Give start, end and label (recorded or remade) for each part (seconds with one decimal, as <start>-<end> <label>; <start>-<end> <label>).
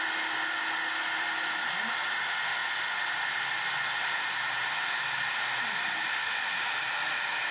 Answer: 0.0-7.5 recorded